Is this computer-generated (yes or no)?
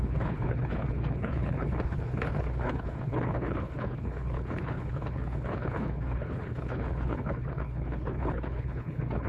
yes